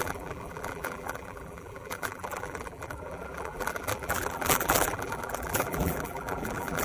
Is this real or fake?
fake